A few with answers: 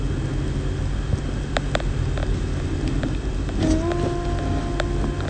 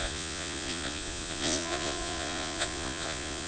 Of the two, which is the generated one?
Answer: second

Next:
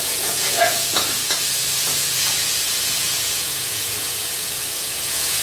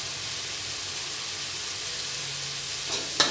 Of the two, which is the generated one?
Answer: first